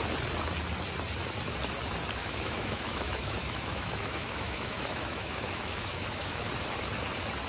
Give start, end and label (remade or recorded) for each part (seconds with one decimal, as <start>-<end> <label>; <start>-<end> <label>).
0.0-2.2 recorded; 2.2-6.5 remade; 6.5-7.5 recorded